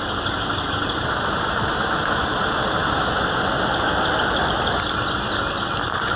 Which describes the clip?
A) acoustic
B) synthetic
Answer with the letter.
A